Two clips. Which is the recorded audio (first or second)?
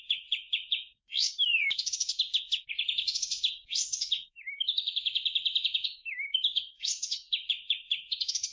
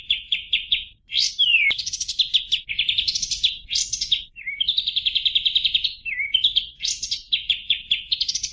second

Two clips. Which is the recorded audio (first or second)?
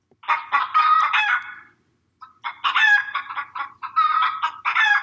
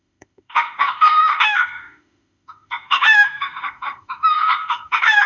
first